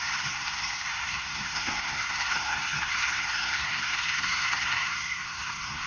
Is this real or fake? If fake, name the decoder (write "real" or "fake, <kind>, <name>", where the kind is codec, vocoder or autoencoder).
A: fake, codec, SNAC